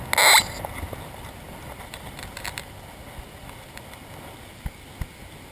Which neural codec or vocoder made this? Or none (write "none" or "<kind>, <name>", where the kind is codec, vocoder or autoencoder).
none